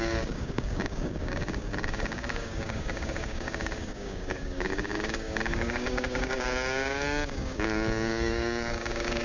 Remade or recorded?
remade